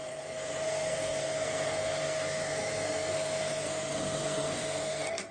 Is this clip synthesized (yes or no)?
yes